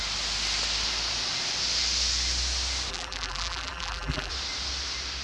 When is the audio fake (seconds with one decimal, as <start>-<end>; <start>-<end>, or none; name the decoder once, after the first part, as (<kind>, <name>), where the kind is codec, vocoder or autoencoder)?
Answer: 2.9-4.3 (vocoder, BigVGAN v2)